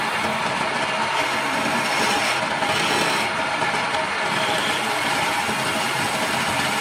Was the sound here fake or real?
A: real